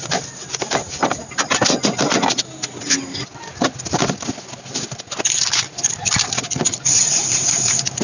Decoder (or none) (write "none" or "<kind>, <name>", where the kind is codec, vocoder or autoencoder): none